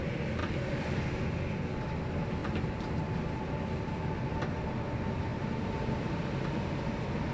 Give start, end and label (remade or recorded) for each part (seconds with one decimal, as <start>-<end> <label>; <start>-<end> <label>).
0.0-2.4 recorded; 2.4-3.0 remade; 3.0-5.3 recorded; 5.3-6.1 remade; 6.1-7.3 recorded